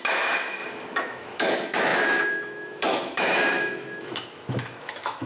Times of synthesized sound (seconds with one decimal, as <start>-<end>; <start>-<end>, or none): 0.0-5.3